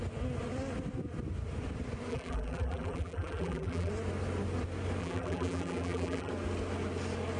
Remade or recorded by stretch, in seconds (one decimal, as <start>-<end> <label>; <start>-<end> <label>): 0.0-2.1 recorded; 2.1-3.9 remade; 3.9-5.0 recorded; 5.0-6.3 remade; 6.3-7.4 recorded